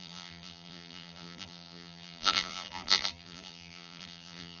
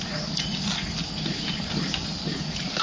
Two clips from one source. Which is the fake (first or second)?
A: first